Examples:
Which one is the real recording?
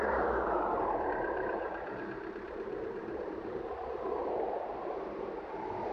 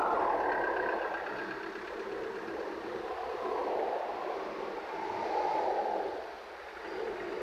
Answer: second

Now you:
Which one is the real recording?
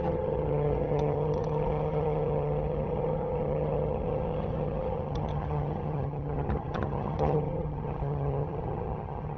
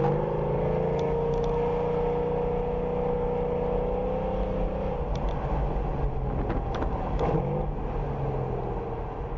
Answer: second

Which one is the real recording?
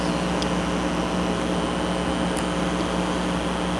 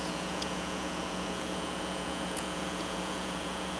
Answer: first